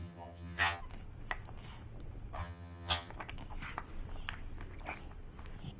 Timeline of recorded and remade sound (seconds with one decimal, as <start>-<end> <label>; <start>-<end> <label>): 0.0-0.8 remade; 0.8-2.4 recorded; 2.4-3.1 remade; 3.1-5.8 recorded